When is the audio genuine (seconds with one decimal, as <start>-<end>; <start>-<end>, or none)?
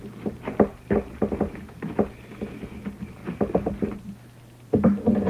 0.0-5.3